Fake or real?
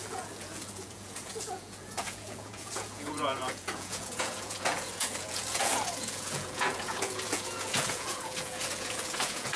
fake